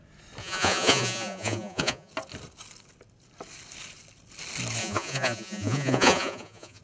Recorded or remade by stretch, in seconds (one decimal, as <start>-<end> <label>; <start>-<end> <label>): 0.0-0.4 recorded; 0.4-2.1 remade; 2.1-4.8 recorded; 4.8-6.8 remade